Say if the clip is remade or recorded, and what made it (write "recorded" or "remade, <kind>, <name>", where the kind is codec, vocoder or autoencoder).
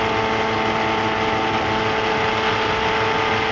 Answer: recorded